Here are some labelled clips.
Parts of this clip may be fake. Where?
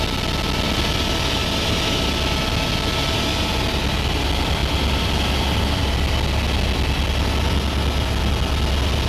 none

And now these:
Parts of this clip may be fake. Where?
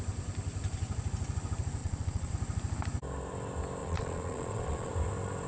1.8-2.3 (vocoder, Vocos); 3.8-4.9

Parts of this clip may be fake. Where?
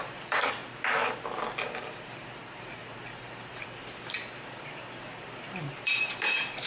0.0-0.6 (vocoder, BigVGAN v2); 1.9-6.7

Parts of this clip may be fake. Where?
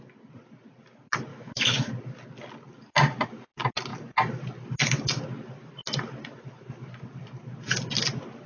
1.3-1.9 (autoencoder, DAC-VAE)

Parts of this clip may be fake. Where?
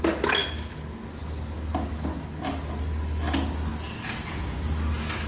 none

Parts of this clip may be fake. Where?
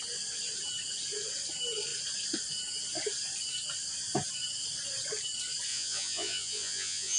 5.7-7.2 (vocoder, Vocos)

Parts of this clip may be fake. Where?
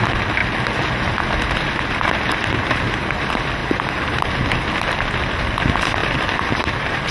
3.6-4.3 (vocoder, BigVGAN v2); 6.0-7.1